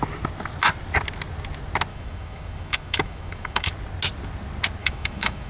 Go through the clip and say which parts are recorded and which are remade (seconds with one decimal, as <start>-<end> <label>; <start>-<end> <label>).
0.0-1.9 recorded; 1.9-3.7 remade; 3.7-4.8 recorded; 4.8-5.5 remade